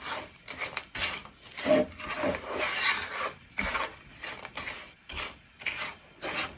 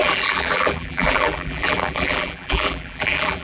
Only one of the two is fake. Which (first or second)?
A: second